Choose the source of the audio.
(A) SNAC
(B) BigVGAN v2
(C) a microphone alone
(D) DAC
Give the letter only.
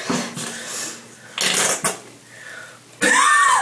C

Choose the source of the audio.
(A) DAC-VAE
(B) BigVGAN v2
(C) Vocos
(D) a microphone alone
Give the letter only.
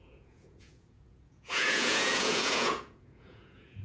C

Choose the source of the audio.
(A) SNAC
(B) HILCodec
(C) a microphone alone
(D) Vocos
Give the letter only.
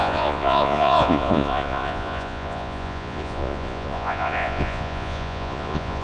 D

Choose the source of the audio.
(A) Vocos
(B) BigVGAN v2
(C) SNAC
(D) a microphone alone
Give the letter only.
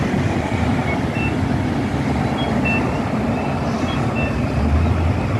D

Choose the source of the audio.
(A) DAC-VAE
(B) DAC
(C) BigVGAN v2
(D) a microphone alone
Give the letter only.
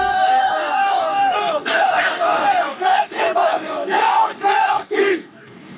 B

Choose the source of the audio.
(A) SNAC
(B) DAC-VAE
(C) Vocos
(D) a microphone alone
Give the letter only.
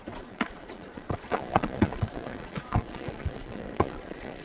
C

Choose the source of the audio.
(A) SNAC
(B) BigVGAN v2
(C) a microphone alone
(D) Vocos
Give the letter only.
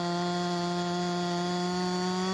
C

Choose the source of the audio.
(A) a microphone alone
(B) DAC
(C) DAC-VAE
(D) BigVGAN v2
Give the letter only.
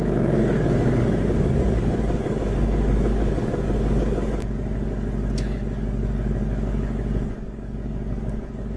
B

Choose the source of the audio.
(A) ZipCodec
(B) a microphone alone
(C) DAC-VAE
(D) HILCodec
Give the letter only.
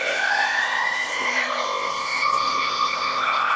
A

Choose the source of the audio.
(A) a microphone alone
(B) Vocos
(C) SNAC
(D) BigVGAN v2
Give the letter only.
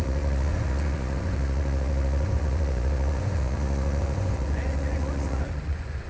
B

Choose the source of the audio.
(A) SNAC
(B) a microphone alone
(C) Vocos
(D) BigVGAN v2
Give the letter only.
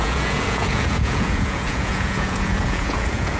C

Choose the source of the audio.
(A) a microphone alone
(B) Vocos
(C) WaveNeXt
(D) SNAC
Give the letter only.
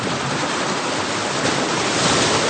A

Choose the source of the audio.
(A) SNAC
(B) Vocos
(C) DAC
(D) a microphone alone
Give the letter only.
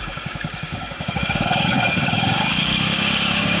C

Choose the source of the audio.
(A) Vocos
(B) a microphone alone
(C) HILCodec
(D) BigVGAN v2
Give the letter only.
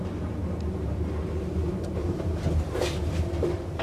D